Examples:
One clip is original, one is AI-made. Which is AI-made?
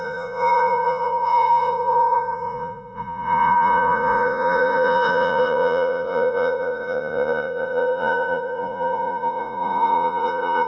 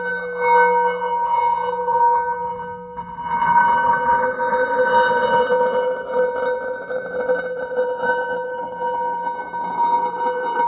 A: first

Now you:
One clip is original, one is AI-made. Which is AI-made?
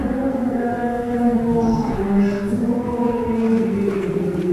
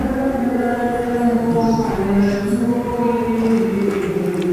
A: first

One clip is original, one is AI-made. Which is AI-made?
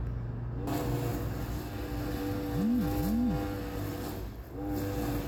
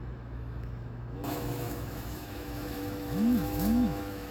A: second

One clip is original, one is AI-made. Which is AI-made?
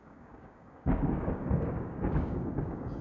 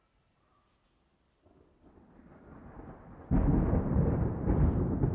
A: first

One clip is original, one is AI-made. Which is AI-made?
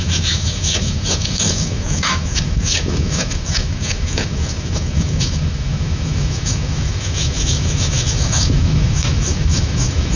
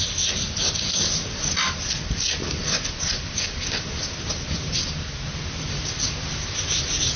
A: first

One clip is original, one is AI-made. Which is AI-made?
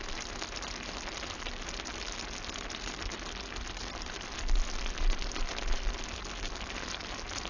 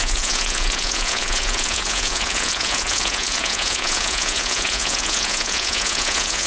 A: second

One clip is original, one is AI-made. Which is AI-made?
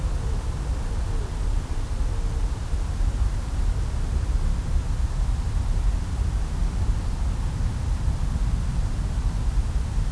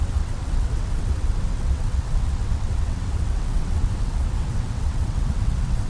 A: second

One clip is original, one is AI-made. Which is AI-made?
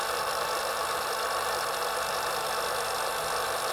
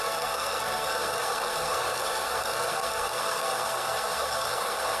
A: second